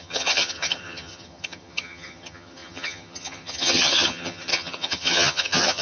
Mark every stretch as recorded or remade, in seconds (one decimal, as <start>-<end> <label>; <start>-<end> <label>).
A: 0.0-5.8 remade